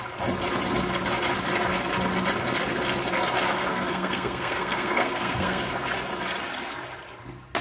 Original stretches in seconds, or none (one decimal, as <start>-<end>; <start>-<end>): 0.0-3.7; 5.7-7.6